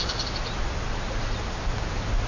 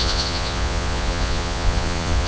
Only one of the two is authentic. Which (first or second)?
first